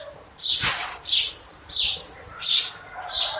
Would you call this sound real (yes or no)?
no